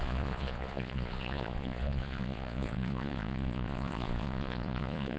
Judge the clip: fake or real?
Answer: fake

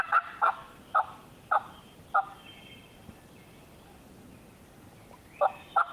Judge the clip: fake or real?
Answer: fake